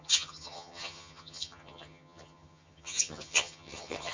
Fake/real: fake